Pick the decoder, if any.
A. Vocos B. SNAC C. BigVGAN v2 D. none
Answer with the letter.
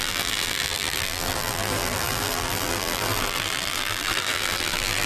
C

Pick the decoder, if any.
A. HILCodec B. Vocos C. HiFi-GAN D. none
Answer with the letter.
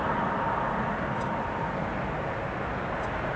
D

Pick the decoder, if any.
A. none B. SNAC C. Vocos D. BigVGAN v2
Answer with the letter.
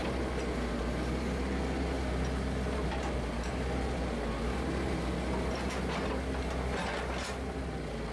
A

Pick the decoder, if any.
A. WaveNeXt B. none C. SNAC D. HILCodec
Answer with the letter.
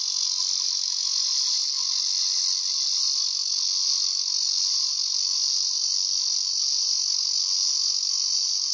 B